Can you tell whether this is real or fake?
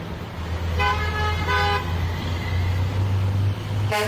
real